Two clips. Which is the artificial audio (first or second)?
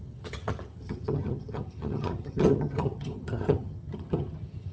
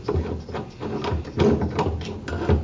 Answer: first